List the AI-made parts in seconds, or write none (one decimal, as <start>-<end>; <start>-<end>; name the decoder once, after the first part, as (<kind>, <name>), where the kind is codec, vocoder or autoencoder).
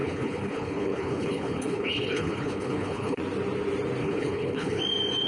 0.0-3.2 (codec, HILCodec); 4.0-4.8